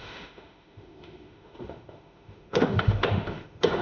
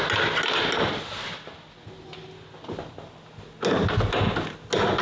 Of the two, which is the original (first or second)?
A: second